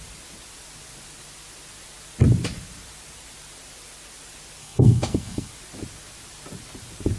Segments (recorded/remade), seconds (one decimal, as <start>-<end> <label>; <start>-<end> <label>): 0.0-4.6 recorded; 4.6-5.5 remade; 5.5-7.2 recorded